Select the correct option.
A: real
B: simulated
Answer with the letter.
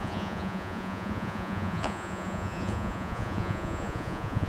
B